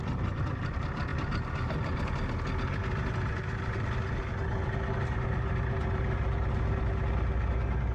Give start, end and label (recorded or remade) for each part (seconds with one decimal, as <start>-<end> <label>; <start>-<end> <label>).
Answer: 0.0-7.9 recorded